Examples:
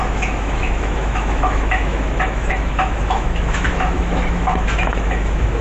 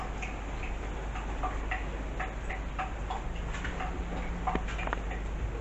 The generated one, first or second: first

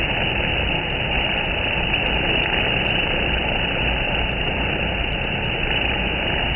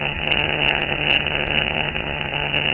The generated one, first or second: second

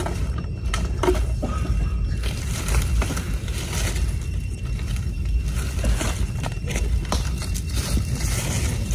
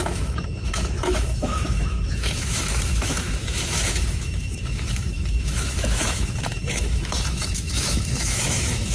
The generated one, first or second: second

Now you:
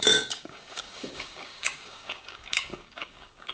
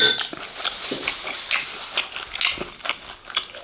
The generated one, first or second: first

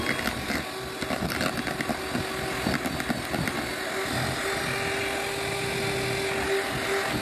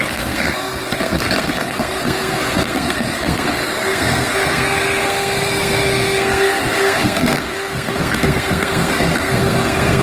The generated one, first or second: second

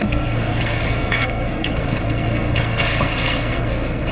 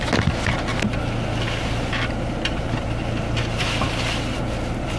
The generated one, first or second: first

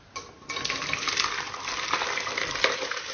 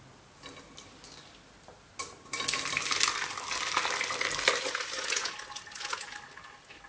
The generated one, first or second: first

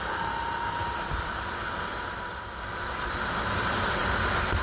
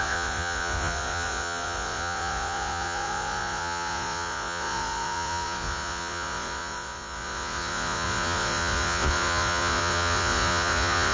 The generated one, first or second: second